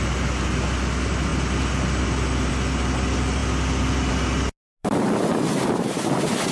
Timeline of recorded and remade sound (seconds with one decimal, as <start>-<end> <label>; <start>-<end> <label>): 0.0-4.8 recorded; 4.8-6.5 remade